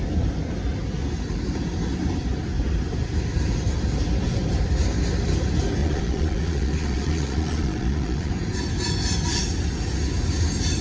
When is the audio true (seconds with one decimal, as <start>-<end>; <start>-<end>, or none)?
0.0-5.8; 8.3-10.8

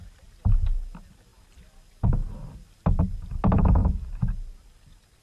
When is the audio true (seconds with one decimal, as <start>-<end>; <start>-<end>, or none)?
0.0-5.2

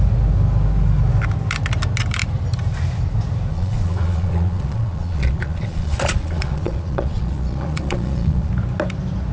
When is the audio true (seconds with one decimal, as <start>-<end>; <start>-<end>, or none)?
0.0-3.5; 8.5-9.3

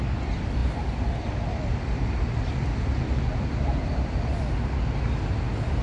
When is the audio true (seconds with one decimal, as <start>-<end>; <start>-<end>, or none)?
0.0-5.8